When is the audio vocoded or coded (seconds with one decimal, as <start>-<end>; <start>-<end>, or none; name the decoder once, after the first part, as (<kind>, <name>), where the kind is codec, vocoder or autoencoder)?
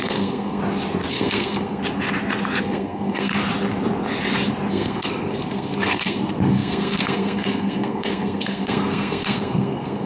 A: 0.0-0.6 (codec, SNAC); 1.1-1.8; 2.6-3.3; 4.7-10.1